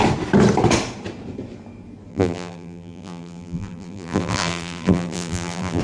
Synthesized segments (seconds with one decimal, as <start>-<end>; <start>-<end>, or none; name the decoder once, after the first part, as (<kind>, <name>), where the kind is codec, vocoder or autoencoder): 2.1-5.8 (vocoder, BigVGAN v2)